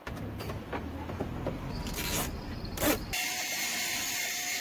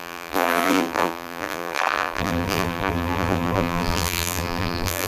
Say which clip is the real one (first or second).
first